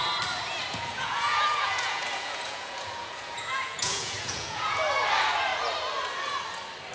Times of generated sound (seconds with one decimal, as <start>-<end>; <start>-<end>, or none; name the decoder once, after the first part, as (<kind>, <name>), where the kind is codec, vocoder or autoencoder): 0.7-4.8 (vocoder, Vocos)